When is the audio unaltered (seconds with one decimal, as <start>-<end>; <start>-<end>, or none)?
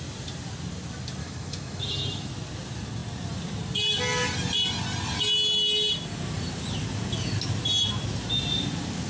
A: 0.0-1.2; 2.3-9.1